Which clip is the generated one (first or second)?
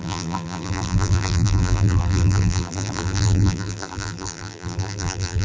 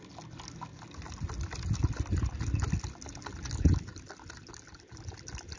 first